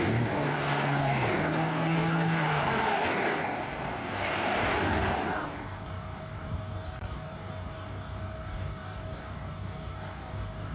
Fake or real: fake